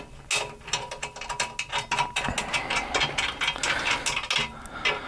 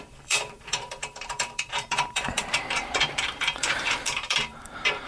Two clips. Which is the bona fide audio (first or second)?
first